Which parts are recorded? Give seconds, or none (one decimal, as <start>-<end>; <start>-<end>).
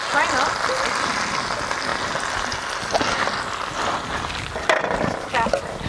0.0-5.9